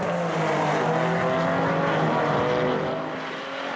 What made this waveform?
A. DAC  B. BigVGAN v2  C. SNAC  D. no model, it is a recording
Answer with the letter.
D